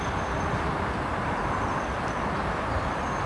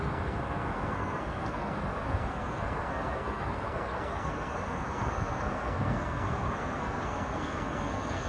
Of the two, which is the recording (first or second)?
first